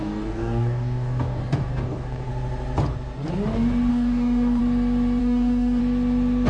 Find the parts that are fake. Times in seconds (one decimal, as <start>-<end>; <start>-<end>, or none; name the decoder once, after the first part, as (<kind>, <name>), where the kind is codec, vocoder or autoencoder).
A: 0.0-2.3 (codec, DAC); 3.9-4.6; 5.2-5.8